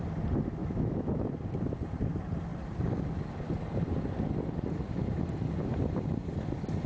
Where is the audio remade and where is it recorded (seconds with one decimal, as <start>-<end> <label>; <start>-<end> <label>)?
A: 0.0-0.6 recorded; 0.6-1.3 remade; 1.3-6.9 recorded